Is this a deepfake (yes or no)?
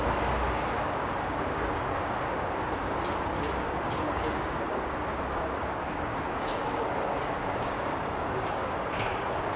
yes